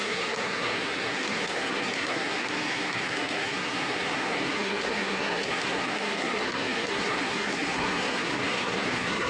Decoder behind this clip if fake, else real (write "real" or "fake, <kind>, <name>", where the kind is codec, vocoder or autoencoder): fake, codec, SNAC